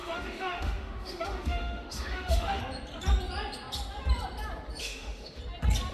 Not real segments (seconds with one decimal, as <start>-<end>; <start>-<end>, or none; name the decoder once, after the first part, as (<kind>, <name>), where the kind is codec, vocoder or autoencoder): 0.0-2.6 (autoencoder, DAC-VAE); 4.8-5.4